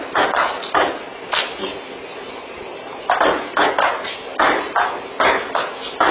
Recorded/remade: recorded